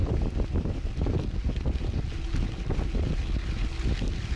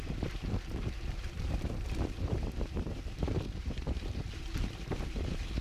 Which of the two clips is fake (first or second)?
second